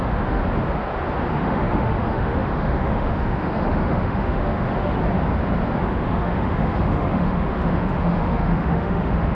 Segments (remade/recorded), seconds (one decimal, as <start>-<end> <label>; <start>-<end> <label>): 0.0-0.4 remade; 0.4-1.3 recorded; 1.3-5.0 remade; 5.0-5.8 recorded; 5.8-9.3 remade